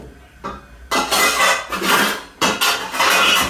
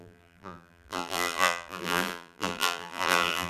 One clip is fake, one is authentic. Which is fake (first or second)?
second